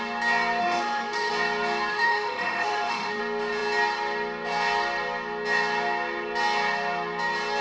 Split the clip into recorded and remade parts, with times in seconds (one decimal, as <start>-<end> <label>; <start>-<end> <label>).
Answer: 0.0-0.6 recorded; 0.6-1.3 remade; 1.3-1.9 recorded; 1.9-3.2 remade; 3.2-7.6 recorded